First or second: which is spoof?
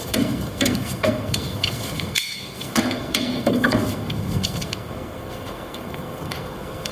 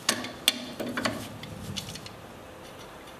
first